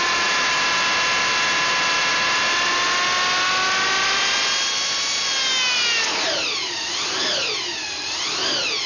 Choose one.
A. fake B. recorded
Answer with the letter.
B